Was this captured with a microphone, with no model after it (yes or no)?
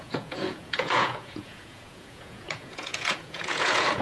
no